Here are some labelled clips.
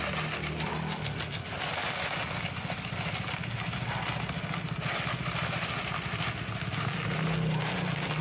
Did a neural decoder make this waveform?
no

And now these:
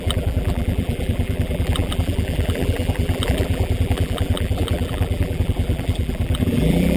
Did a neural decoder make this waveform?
yes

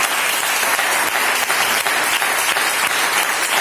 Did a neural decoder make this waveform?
no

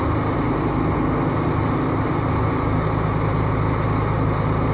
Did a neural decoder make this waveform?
no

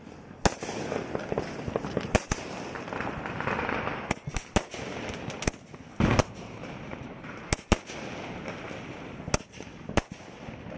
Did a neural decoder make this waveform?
no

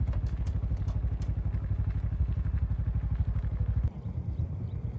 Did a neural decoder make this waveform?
no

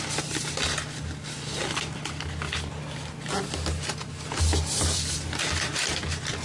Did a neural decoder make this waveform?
no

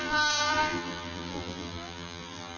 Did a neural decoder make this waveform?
yes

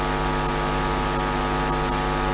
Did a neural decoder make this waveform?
no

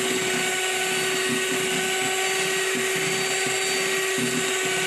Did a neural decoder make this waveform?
no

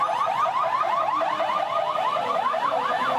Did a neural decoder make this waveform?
no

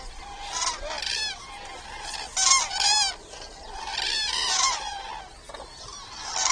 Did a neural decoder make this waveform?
no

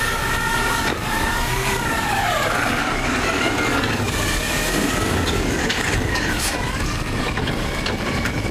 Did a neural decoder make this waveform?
yes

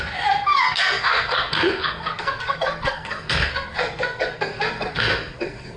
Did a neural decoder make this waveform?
yes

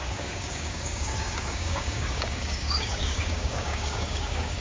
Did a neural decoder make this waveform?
yes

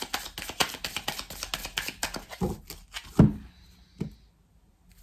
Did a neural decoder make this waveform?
no